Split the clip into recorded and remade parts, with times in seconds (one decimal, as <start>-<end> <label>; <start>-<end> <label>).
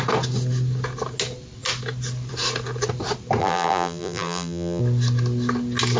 0.0-3.4 recorded; 3.4-4.8 remade; 4.8-6.0 recorded